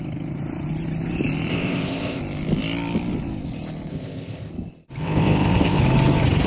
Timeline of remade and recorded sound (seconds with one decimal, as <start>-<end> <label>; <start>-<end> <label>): 0.0-1.5 recorded; 1.5-2.2 remade; 2.2-3.9 recorded; 3.9-4.5 remade; 4.5-5.0 recorded; 5.0-5.8 remade; 5.8-6.5 recorded